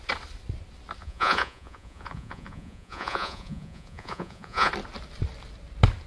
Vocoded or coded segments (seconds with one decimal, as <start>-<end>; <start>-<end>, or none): 1.0-4.7